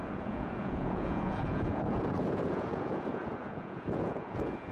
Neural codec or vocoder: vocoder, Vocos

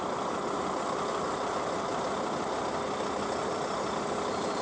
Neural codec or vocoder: none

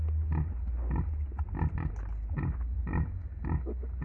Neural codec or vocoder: none